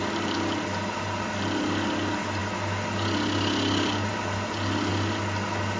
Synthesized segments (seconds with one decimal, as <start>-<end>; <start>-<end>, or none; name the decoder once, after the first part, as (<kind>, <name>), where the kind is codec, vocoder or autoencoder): none